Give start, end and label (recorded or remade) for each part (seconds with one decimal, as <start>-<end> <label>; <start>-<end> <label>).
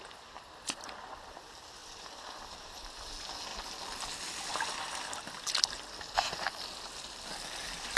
0.0-1.8 recorded; 1.8-2.8 remade; 2.8-8.0 recorded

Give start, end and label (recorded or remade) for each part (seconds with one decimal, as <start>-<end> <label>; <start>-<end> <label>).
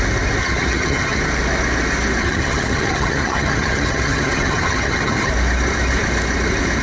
0.0-0.4 recorded; 0.4-1.2 remade; 1.2-2.2 recorded; 2.2-5.3 remade; 5.3-6.8 recorded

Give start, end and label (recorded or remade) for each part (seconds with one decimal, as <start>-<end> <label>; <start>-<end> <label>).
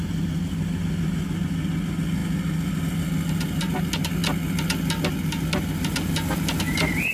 0.0-7.1 recorded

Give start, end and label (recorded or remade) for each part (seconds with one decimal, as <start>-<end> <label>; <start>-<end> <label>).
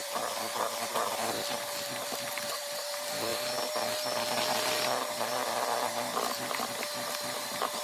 0.0-0.9 remade; 0.9-2.3 recorded; 2.3-3.3 remade; 3.3-4.5 recorded; 4.5-5.4 remade; 5.4-6.5 recorded; 6.5-7.8 remade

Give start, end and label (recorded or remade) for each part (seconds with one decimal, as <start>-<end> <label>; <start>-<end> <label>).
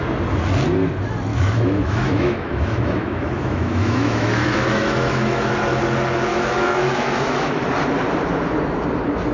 0.0-1.3 recorded; 1.3-5.5 remade; 5.5-6.3 recorded; 6.3-7.6 remade; 7.6-9.3 recorded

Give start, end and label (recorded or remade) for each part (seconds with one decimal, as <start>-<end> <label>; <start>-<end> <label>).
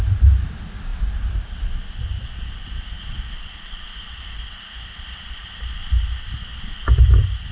0.0-7.5 recorded